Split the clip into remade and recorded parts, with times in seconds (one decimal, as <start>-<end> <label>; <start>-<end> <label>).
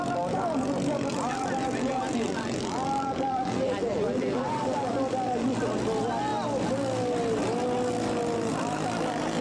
0.0-1.1 recorded; 1.1-4.9 remade; 4.9-9.4 recorded